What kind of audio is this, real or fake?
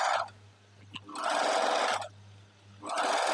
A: real